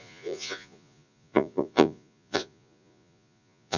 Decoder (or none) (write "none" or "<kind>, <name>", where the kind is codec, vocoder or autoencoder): vocoder, Vocos